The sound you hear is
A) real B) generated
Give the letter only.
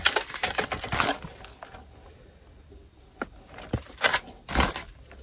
A